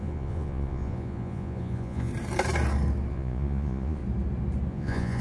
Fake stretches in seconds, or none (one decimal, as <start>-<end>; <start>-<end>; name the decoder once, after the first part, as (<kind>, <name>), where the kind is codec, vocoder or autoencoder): 0.0-2.1 (vocoder, Vocos); 3.1-4.0; 4.7-5.2